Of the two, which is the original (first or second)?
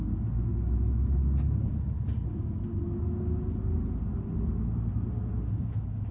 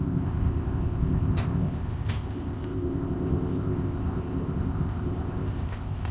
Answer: first